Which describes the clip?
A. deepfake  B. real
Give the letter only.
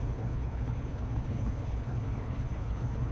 A